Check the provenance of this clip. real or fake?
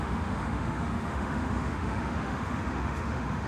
fake